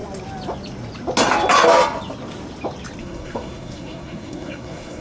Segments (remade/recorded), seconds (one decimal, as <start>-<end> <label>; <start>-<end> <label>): 0.0-3.0 recorded; 3.0-5.0 remade